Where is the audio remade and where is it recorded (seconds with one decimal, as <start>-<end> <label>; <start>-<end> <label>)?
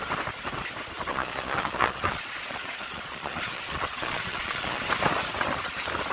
0.0-1.1 recorded; 1.1-4.8 remade; 4.8-6.1 recorded